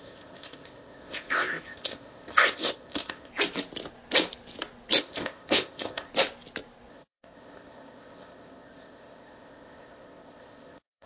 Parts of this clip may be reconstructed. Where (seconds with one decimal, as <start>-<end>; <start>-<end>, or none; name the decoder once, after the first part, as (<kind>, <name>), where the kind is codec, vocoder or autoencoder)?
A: 0.0-3.3 (codec, ZipCodec); 5.0-6.1; 6.9-11.1